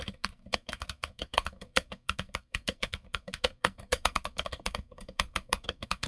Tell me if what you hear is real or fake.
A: fake